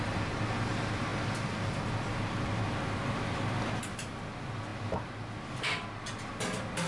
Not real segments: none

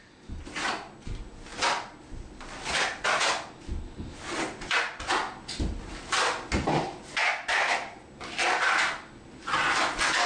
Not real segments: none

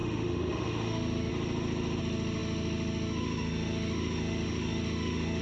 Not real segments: 0.0-1.3 (autoencoder, DAC-VAE); 2.0-5.4

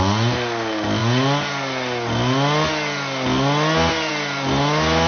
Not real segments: none